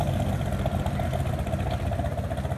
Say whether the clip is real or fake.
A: real